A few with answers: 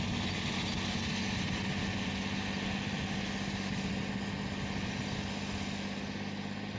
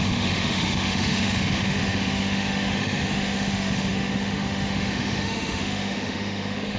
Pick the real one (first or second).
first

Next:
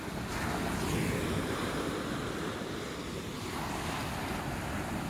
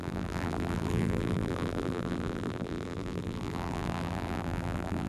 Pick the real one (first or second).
first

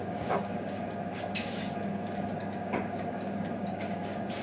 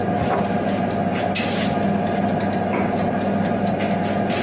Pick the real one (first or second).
second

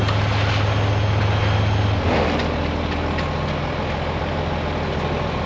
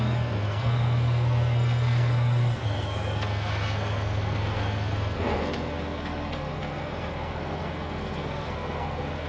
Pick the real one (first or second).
first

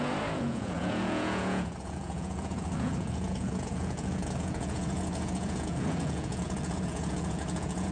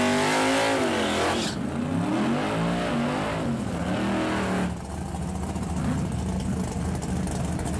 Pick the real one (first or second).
second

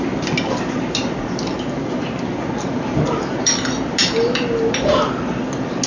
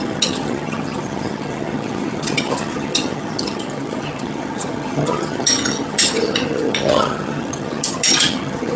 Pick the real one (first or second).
first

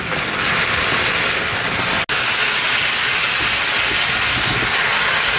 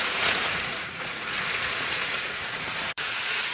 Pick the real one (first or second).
first